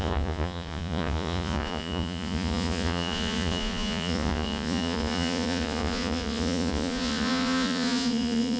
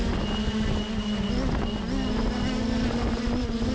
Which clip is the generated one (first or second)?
first